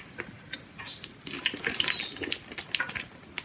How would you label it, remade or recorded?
recorded